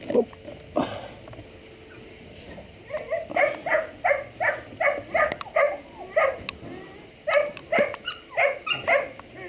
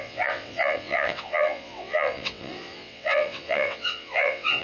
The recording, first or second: first